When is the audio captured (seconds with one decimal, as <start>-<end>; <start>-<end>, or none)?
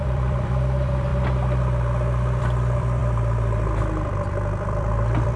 1.1-2.4